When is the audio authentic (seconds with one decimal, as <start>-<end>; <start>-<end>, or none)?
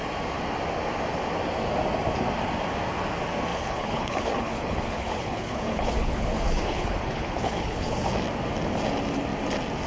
0.0-3.5; 8.1-9.9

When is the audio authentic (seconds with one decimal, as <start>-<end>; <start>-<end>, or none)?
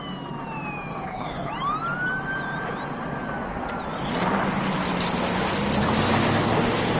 0.0-0.9; 1.5-7.0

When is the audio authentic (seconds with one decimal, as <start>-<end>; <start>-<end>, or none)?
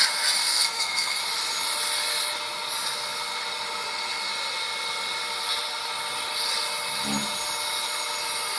0.0-0.4; 1.2-8.6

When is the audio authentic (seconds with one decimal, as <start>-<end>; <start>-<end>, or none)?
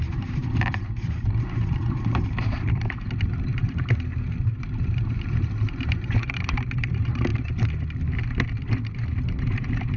7.3-9.4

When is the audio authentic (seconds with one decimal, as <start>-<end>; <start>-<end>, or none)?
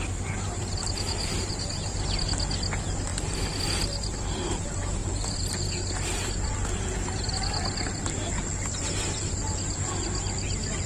0.0-10.9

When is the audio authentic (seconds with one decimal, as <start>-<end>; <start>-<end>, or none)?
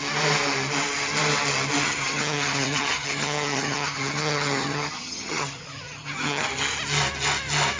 0.0-1.8; 6.5-7.8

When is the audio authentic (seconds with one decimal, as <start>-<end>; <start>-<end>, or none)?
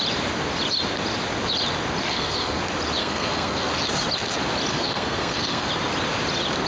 0.0-2.1; 2.6-3.0; 3.7-4.7; 5.7-6.7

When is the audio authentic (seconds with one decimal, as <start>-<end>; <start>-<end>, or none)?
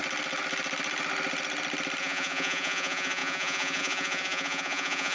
0.0-2.0